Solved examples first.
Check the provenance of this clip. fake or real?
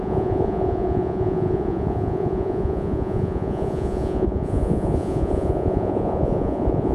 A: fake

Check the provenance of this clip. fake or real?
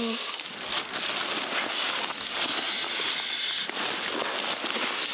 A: real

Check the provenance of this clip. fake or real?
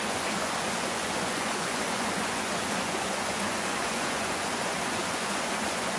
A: fake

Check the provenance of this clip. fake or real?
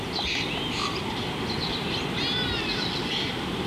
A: real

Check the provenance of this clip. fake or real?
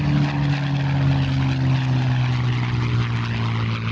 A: real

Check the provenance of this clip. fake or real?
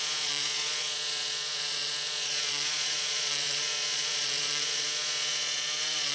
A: fake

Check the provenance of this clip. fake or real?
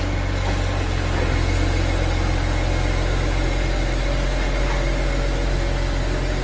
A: real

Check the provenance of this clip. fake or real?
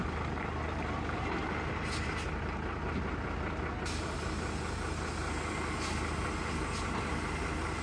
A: real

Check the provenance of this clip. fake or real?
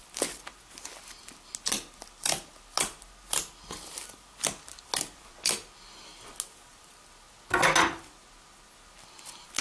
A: real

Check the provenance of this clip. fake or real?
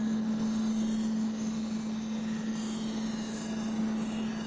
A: real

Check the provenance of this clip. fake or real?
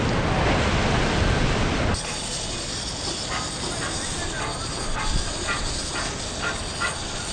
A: real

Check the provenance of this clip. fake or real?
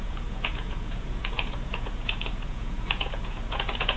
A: fake